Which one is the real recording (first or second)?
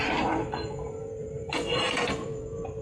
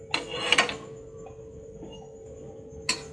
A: second